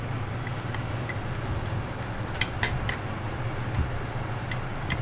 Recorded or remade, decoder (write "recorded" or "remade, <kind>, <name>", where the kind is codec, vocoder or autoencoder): recorded